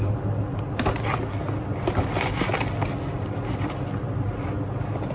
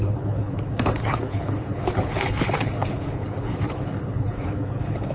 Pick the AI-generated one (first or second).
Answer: second